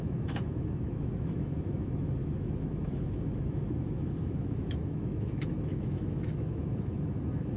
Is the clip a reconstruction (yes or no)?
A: yes